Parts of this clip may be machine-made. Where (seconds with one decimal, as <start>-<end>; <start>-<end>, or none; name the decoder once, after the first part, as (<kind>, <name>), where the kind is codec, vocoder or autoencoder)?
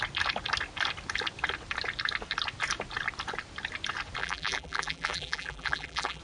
4.2-6.2 (vocoder, BigVGAN v2)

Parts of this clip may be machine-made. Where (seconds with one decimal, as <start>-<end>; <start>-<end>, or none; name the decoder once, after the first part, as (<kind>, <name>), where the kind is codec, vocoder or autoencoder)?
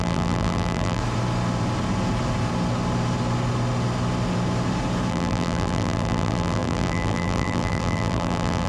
0.0-1.0 (vocoder, BigVGAN v2); 5.1-8.7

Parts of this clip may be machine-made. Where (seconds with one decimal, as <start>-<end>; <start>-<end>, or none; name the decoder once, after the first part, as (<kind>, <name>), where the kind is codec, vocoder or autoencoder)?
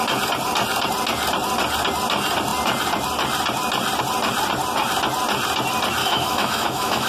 6.0-7.1 (autoencoder, DAC-VAE)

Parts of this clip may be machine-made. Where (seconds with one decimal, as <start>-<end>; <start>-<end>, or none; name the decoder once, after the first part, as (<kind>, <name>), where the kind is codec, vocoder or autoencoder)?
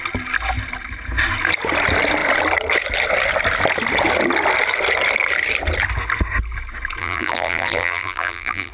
7.0-8.7 (vocoder, BigVGAN v2)